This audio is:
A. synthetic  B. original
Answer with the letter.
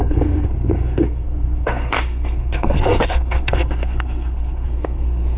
A